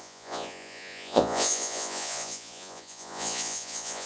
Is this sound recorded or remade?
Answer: remade